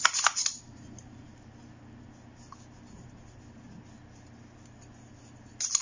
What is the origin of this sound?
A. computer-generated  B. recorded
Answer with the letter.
B